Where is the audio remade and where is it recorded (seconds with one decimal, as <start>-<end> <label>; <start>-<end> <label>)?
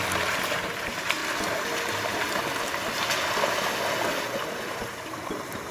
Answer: 0.0-1.2 remade; 1.2-4.6 recorded; 4.6-5.7 remade